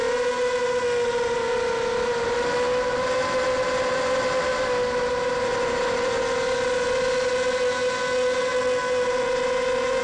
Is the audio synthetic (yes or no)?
no